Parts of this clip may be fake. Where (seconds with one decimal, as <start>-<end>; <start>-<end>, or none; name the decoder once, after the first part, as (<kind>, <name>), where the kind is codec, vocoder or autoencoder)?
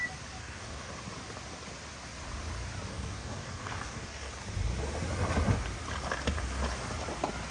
0.4-0.9 (codec, DAC); 2.9-4.3